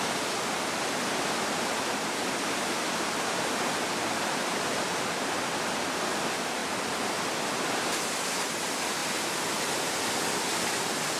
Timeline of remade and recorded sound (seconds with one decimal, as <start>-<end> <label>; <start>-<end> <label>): 0.0-11.2 recorded